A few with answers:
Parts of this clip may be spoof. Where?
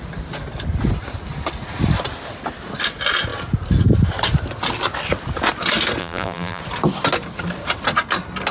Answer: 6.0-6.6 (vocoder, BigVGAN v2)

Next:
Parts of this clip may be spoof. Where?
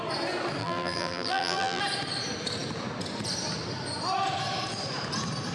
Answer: 0.6-1.8 (vocoder, BigVGAN v2)